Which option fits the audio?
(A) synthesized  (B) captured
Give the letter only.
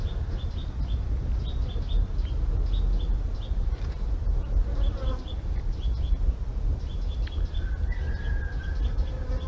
B